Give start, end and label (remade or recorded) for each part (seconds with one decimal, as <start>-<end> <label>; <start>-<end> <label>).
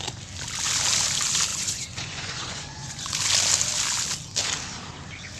0.0-1.5 recorded; 1.5-3.2 remade; 3.2-5.4 recorded